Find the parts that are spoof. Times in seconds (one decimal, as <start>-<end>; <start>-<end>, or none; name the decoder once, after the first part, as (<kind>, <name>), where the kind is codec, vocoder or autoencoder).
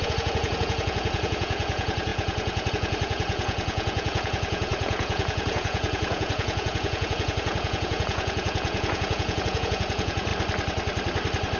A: 0.0-10.3 (vocoder, Vocos)